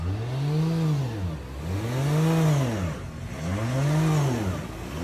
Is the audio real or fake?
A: real